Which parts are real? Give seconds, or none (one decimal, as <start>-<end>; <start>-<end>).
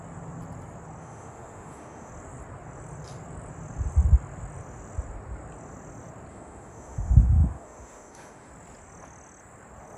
0.0-1.0; 2.1-6.3; 8.5-10.0